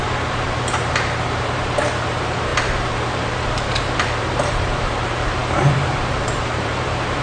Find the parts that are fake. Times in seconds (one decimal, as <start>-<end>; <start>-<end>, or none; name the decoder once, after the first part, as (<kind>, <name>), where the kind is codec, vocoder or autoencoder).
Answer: 0.0-7.2 (vocoder, BigVGAN v2)